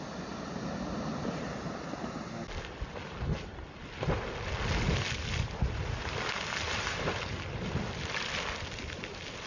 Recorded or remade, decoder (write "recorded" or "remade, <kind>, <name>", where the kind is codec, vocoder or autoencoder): recorded